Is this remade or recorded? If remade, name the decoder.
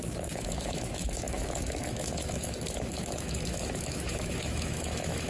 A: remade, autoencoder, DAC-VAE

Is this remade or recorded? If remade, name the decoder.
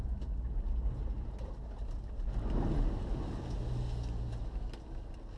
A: recorded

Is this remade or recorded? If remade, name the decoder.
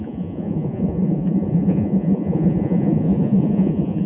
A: remade, vocoder, Vocos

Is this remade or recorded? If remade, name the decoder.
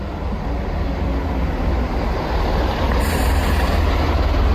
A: recorded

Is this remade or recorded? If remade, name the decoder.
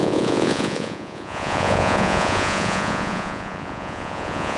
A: remade, vocoder, Vocos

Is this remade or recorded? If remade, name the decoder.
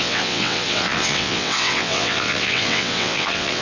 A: remade, vocoder, WaveNeXt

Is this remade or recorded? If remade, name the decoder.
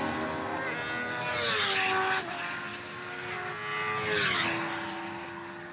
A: recorded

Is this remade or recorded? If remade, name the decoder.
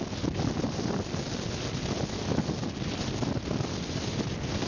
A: recorded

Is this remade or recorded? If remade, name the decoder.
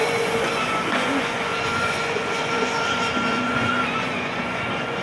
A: remade, vocoder, Vocos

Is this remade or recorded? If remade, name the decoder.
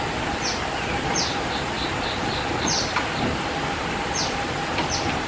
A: recorded